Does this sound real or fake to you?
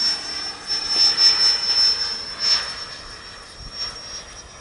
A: real